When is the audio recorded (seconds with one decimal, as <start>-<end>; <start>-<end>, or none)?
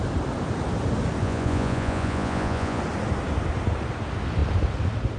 0.0-1.2; 2.8-5.2